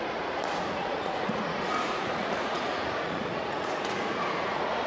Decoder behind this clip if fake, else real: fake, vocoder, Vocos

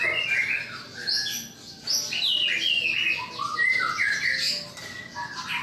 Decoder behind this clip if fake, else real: real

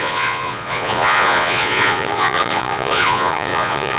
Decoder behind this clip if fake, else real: fake, vocoder, Vocos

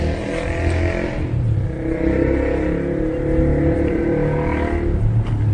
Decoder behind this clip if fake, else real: real